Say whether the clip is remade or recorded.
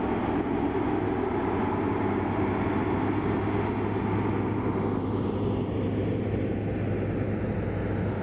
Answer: recorded